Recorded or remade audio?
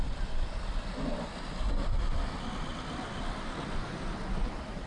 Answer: recorded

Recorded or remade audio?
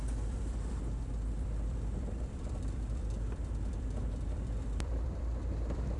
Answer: remade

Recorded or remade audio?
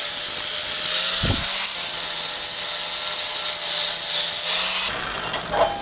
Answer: recorded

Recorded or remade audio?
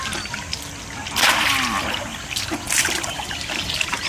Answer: remade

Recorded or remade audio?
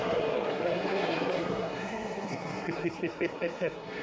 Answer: remade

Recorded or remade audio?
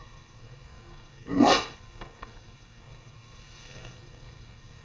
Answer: remade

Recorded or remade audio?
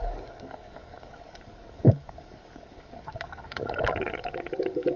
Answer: remade